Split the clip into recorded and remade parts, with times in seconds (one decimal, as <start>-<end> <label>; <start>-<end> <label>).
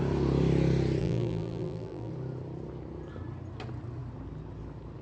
0.0-1.0 recorded; 1.0-2.1 remade; 2.1-5.0 recorded